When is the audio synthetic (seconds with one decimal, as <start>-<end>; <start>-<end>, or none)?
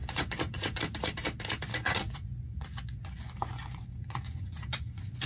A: 0.0-0.8; 1.7-5.3